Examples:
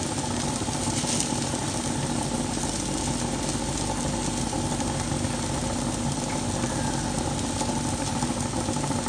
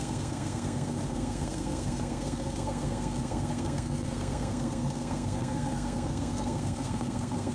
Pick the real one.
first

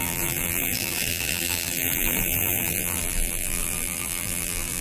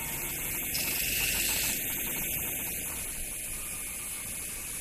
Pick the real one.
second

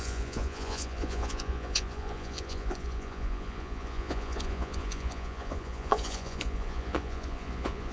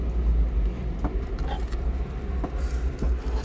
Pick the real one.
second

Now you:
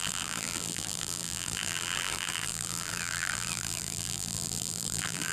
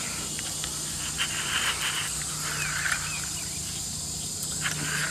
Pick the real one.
second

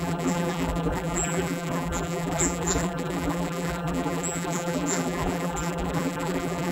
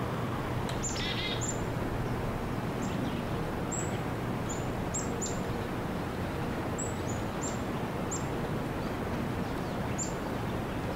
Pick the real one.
second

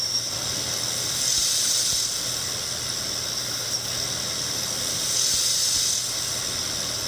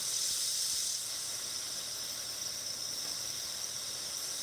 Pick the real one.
first